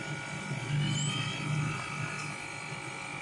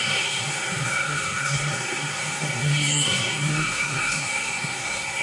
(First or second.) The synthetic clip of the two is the second